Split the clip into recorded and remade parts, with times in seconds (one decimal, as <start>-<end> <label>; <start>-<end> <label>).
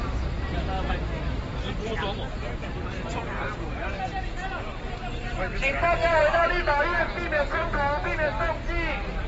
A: 0.0-6.4 remade; 6.4-9.3 recorded